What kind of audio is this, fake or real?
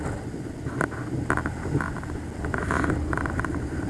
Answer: real